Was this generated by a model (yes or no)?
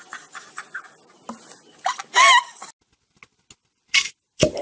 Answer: no